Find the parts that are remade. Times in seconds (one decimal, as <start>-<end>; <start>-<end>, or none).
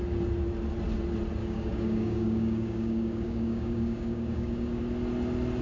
1.4-4.8